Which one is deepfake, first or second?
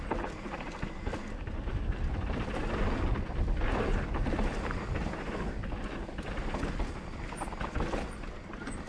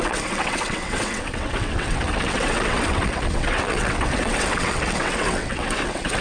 second